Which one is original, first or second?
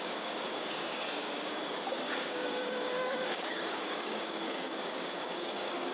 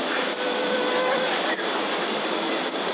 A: second